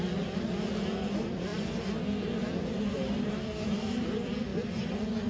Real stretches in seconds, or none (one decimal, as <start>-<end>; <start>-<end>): 1.5-2.7